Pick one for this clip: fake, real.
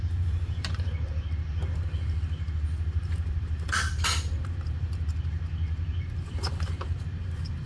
real